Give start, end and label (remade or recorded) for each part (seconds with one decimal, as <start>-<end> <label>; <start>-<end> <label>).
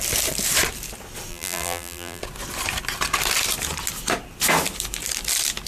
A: 0.0-1.3 recorded; 1.3-2.2 remade; 2.2-5.7 recorded